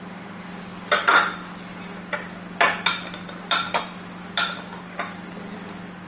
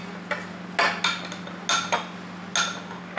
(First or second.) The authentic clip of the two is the second